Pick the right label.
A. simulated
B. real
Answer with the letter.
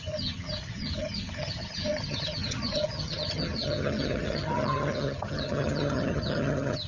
A